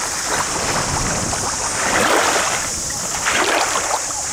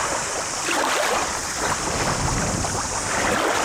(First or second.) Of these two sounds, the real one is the first